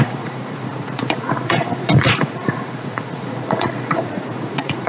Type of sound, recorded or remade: remade